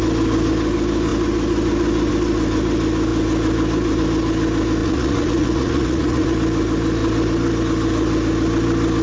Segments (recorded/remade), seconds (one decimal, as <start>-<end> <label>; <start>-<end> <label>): 0.0-4.8 recorded; 4.8-6.3 remade; 6.3-9.0 recorded

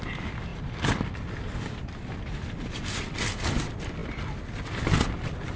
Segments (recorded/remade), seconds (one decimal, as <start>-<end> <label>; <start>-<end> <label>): 0.0-5.6 recorded

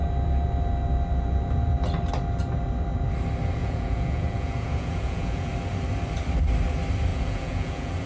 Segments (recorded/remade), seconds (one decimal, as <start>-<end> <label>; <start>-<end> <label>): 0.0-3.6 recorded; 3.6-5.5 remade; 5.5-7.1 recorded; 7.1-8.1 remade

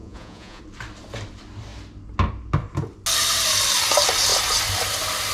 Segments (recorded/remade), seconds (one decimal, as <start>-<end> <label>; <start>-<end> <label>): 0.0-0.6 remade; 0.6-5.3 recorded